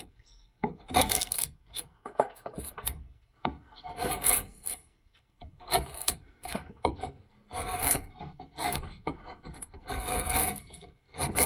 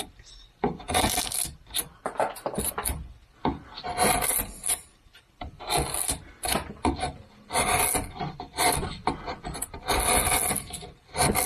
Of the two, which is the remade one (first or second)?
first